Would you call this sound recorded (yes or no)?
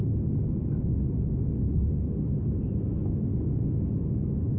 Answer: yes